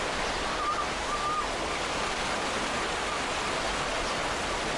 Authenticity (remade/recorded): recorded